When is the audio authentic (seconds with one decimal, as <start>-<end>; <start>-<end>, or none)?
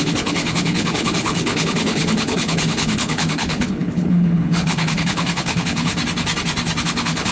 5.9-6.8